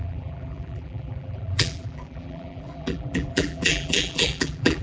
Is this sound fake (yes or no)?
yes